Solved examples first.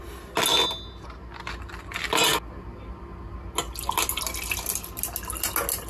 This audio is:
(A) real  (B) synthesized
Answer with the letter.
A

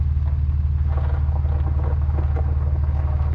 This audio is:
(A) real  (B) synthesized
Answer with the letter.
A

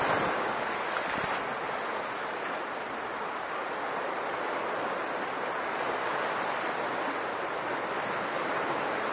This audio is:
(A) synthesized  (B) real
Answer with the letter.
B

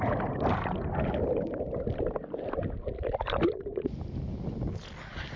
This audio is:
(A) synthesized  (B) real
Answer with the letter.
B